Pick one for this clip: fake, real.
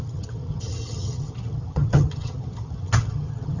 fake